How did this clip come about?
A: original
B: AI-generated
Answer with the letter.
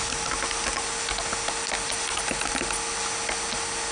A